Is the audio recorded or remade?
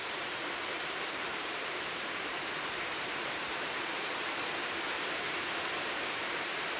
remade